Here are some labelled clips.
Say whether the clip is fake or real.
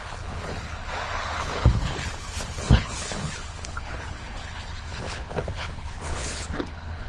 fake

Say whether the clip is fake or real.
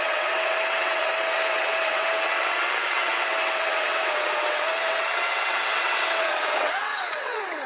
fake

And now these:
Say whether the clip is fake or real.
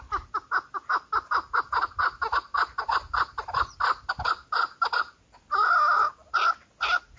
real